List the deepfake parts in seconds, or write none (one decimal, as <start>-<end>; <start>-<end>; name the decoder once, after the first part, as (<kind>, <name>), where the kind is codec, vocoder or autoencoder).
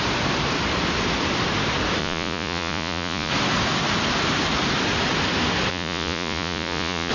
2.0-3.3 (vocoder, Vocos); 5.7-7.1